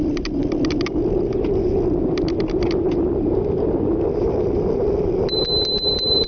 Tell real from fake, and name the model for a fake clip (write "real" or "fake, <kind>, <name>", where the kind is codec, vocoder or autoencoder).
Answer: real